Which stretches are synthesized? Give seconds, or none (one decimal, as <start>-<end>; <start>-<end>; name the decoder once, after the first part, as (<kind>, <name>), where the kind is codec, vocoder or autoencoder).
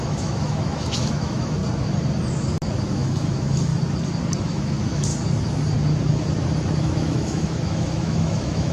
0.0-1.6 (autoencoder, DAC-VAE); 2.8-3.7; 4.4-5.1; 6.8-8.7